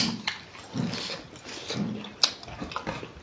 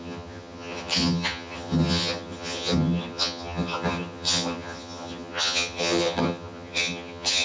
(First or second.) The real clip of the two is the first